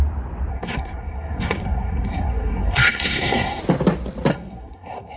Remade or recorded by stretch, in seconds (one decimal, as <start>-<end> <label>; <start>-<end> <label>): 0.0-0.5 recorded; 0.5-3.6 remade; 3.6-4.3 recorded; 4.3-5.2 remade